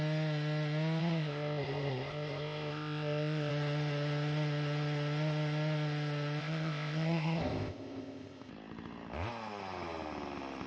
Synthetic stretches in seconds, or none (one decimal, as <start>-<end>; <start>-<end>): 1.0-3.5; 6.4-8.5